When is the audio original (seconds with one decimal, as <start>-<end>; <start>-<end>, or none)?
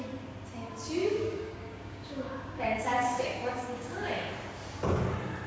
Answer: 0.0-1.0; 4.3-5.5